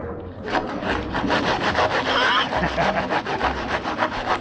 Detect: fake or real fake